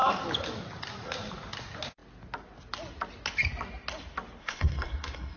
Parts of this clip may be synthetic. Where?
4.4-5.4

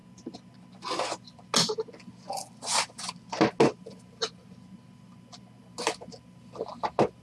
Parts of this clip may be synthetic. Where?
none

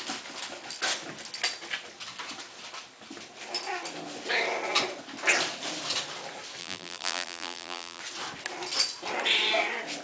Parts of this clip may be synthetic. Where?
6.6-8.0

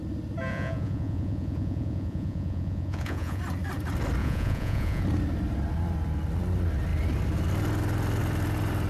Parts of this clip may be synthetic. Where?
0.5-3.4; 4.2-5.0

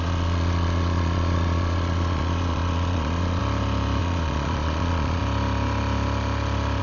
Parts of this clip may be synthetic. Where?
0.0-3.4; 4.0-5.2

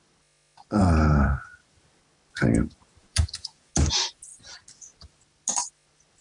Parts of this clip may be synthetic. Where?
3.0-3.7

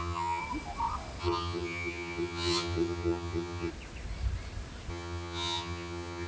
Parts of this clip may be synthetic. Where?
0.0-0.4; 1.2-3.7; 4.9-6.3

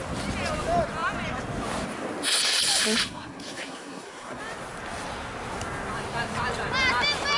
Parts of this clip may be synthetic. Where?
3.0-4.4